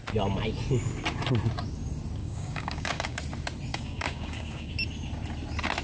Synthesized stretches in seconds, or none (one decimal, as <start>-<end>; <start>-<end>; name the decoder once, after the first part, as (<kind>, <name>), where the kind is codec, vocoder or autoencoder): 2.2-3.2 (codec, DAC); 3.7-4.7